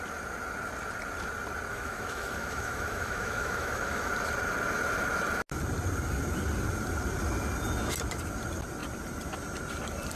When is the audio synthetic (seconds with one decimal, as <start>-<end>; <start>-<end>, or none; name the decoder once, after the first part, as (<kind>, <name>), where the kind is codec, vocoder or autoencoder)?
1.7-4.1 (autoencoder, DAC-VAE)